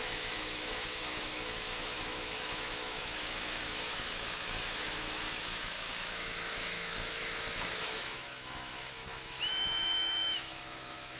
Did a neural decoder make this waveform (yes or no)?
yes